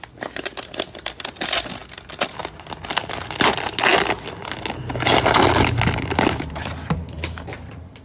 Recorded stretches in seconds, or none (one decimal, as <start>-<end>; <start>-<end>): 0.0-8.0